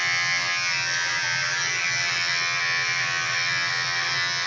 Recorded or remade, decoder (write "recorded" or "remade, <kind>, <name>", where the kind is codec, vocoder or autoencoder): recorded